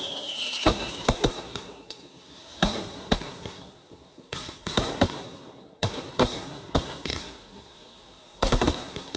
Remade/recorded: remade